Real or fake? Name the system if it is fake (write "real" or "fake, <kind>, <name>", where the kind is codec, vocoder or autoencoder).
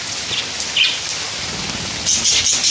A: real